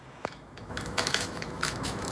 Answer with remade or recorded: remade